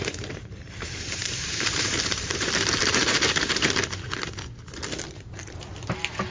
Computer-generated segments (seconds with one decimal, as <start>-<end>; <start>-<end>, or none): 0.0-3.7